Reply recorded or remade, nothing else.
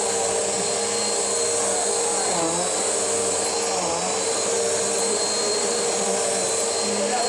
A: recorded